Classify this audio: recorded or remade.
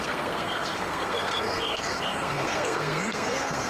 remade